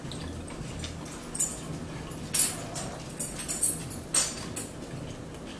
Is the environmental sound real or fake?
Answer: real